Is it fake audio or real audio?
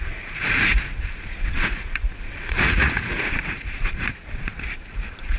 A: fake